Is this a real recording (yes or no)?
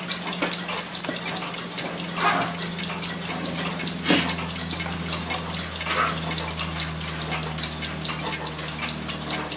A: yes